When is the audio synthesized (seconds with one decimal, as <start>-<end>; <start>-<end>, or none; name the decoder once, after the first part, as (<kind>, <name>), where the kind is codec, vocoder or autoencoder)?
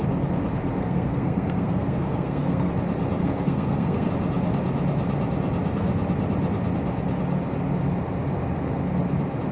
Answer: 0.8-2.7 (codec, SNAC); 3.2-4.1